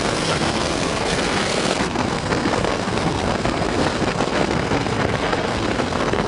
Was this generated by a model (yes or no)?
yes